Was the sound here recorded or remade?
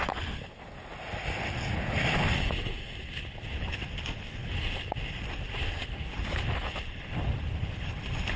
recorded